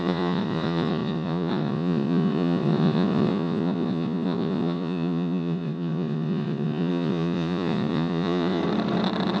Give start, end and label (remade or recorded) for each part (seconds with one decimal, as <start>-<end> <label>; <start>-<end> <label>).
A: 0.0-8.6 remade; 8.6-9.4 recorded